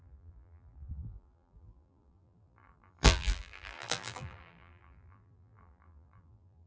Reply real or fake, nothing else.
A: fake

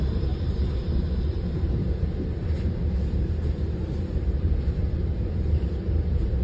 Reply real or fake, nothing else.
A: fake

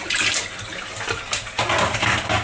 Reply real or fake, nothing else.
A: real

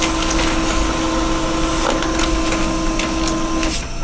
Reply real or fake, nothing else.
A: real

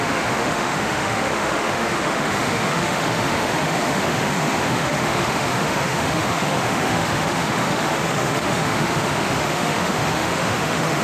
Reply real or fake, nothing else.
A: fake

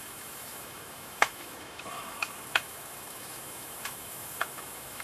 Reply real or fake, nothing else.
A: fake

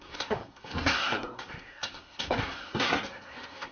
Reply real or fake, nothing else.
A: fake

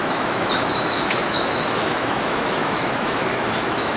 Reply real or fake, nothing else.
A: fake